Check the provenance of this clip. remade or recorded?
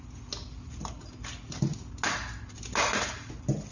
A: recorded